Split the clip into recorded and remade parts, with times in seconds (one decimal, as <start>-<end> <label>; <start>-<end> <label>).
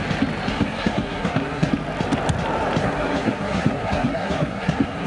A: 0.0-0.5 recorded; 0.5-1.7 remade; 1.7-2.8 recorded; 2.8-5.1 remade